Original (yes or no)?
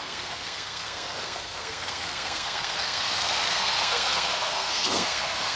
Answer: no